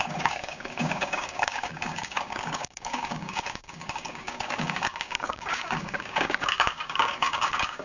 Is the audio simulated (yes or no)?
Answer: yes